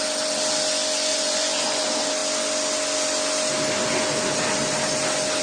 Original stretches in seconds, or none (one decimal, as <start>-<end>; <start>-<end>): 0.0-1.1; 1.8-5.4